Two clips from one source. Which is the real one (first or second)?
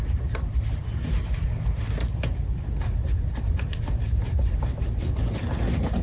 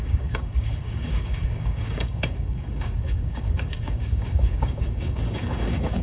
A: first